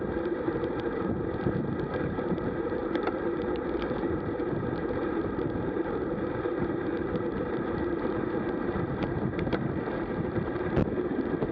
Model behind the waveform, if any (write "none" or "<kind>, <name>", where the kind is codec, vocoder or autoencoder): vocoder, BigVGAN v2